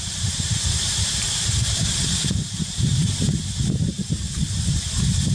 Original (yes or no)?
no